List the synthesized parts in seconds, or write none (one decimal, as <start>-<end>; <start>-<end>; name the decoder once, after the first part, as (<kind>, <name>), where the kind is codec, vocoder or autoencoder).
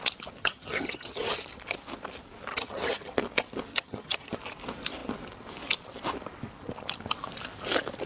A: 0.4-1.3 (vocoder, HiFi-GAN); 2.5-3.1; 3.7-4.4